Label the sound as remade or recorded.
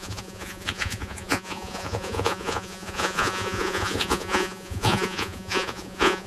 remade